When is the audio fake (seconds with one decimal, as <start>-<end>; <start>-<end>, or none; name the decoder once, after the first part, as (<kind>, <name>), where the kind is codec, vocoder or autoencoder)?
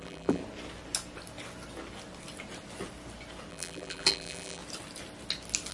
0.0-0.4 (vocoder, BigVGAN v2); 3.5-4.6